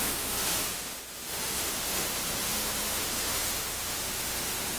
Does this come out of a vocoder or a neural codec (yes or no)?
yes